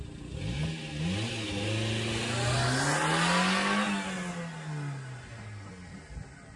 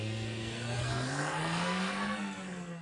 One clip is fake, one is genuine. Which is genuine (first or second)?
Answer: first